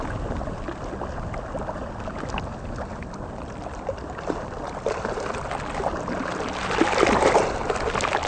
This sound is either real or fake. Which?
real